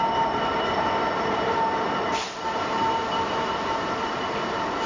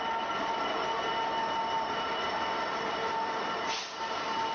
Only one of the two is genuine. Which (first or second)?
second